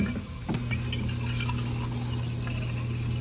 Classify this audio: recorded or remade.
recorded